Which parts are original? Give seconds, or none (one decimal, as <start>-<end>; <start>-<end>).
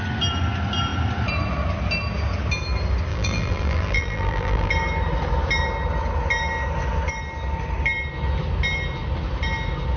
0.0-3.1; 4.7-10.0